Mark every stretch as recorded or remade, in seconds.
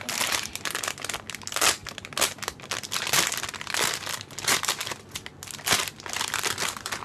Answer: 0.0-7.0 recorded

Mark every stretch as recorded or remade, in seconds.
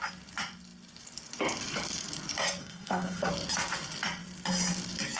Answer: 0.0-2.6 recorded; 2.6-3.3 remade; 3.3-5.2 recorded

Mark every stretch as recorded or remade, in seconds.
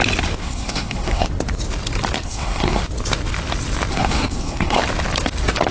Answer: 0.0-0.4 recorded; 0.4-1.3 remade; 1.3-2.2 recorded; 2.2-2.8 remade; 2.8-3.9 recorded; 3.9-4.8 remade; 4.8-5.7 recorded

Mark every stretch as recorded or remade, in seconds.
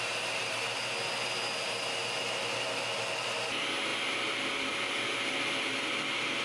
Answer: 0.0-6.4 recorded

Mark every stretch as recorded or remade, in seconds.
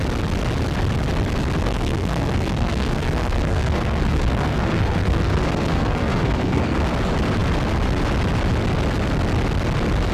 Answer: 0.0-1.6 recorded; 1.6-6.8 remade; 6.8-10.1 recorded